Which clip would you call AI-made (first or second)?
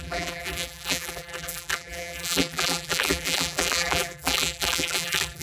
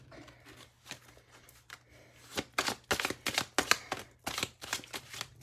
first